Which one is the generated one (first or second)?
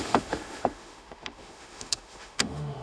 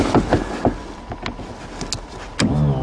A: first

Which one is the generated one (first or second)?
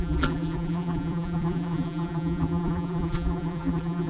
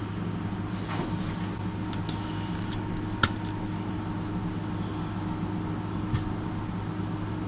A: first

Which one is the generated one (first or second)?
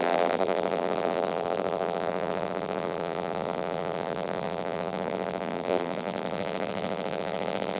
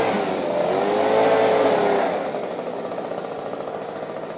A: first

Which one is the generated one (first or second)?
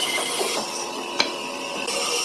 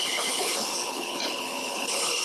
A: second